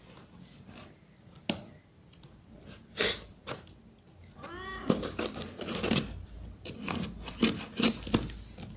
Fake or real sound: real